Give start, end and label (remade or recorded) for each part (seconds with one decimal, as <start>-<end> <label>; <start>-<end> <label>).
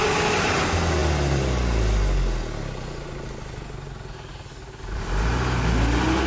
0.0-6.3 recorded